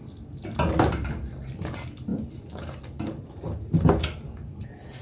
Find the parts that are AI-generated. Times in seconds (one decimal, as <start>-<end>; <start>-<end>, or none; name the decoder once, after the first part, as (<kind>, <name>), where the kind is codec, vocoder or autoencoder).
none